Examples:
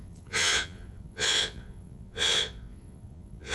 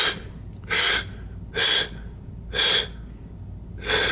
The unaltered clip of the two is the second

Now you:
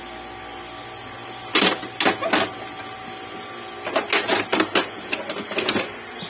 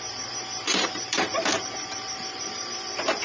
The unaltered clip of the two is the first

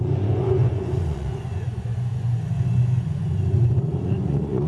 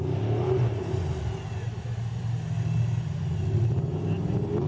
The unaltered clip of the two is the second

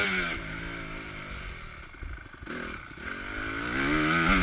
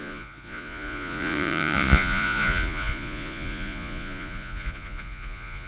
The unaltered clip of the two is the first